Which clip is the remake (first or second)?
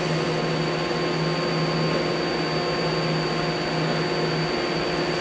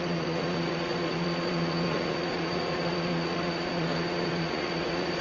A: second